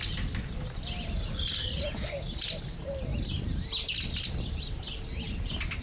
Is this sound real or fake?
real